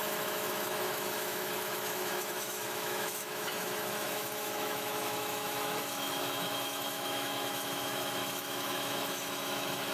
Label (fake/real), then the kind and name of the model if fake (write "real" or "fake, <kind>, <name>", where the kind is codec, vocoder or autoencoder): fake, autoencoder, DAC-VAE